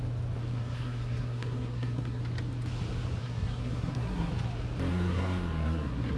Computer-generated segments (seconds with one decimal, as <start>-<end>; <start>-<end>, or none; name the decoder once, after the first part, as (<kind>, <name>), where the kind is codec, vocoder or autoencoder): 0.5-2.2 (codec, SNAC); 3.2-4.3; 4.9-6.2